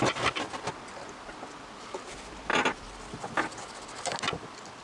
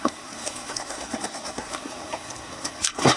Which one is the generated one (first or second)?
second